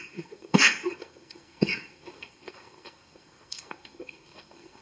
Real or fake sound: fake